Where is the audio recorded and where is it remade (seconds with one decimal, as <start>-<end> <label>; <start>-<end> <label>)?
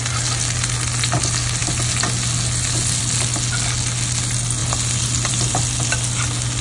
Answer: 0.0-6.6 recorded